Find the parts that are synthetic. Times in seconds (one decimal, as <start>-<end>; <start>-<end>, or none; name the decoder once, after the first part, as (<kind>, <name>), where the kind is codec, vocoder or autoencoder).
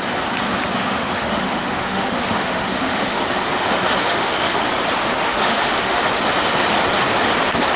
0.7-3.2 (autoencoder, DAC-VAE); 4.0-4.6; 5.0-6.0